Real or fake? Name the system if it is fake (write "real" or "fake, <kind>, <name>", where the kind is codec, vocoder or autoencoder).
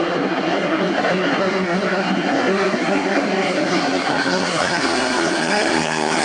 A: fake, codec, SNAC